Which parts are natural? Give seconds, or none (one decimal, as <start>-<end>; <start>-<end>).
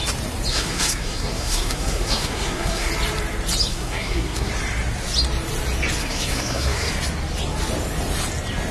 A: 0.0-0.5; 2.9-3.7; 4.5-6.0; 6.9-8.7